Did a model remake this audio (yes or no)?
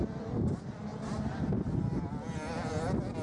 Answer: no